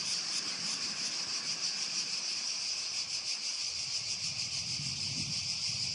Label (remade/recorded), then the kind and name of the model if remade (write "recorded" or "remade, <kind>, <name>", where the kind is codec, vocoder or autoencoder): recorded